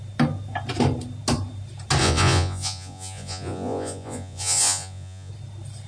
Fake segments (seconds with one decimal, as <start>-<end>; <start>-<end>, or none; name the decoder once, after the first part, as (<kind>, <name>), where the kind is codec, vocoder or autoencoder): 2.0-5.3 (vocoder, Vocos)